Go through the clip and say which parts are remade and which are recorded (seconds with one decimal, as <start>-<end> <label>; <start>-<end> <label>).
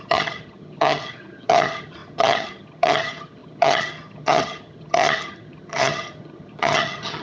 0.0-7.2 remade